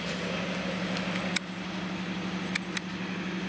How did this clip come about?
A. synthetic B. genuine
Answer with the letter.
B